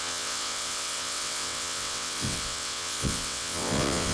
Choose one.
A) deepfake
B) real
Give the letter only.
A